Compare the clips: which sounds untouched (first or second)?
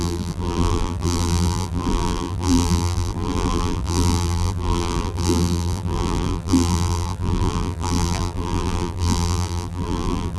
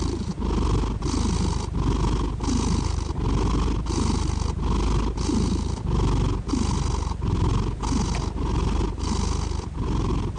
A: second